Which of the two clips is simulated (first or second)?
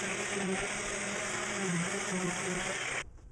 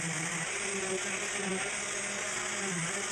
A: first